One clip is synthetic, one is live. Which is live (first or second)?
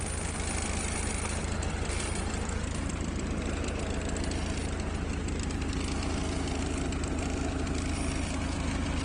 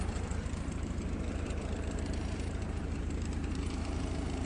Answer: first